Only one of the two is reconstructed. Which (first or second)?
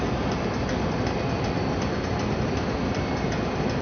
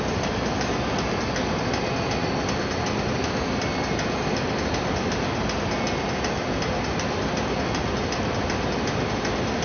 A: first